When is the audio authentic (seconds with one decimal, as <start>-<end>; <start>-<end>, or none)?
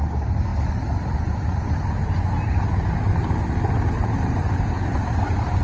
0.5-3.9